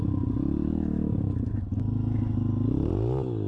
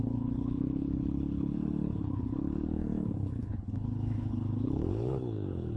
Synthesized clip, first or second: second